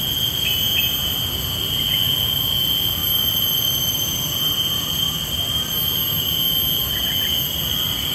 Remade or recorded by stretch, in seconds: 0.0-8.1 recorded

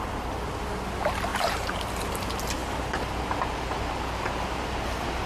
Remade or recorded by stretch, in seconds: 0.0-1.3 recorded; 1.3-2.0 remade; 2.0-5.3 recorded

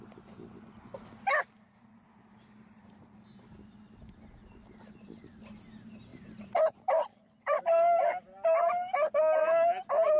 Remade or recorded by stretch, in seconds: 0.0-6.1 recorded; 6.1-8.9 remade; 8.9-10.2 recorded